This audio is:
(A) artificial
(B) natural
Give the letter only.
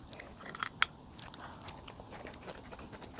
B